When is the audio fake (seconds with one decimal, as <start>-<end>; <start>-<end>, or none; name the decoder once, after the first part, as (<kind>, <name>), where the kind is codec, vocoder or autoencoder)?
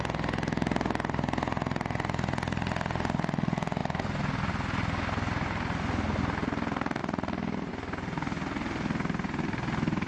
7.0-7.7 (vocoder, BigVGAN v2)